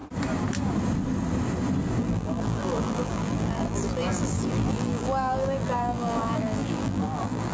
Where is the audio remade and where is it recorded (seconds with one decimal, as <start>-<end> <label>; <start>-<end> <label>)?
0.0-2.0 recorded; 2.0-7.5 remade